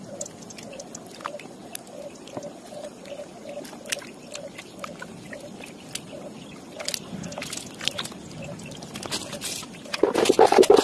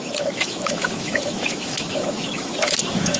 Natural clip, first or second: first